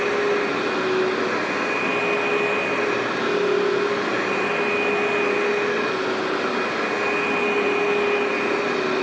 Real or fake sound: real